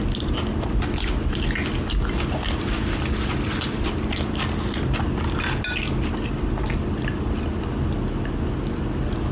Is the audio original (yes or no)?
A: yes